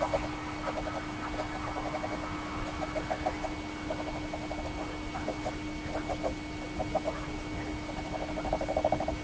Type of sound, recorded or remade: recorded